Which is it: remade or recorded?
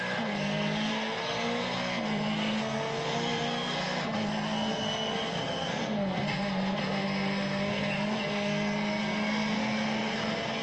remade